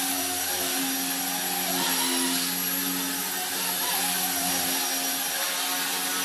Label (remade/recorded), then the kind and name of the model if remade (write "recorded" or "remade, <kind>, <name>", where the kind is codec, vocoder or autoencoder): recorded